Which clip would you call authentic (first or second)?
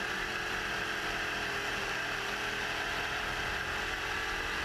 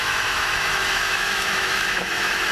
first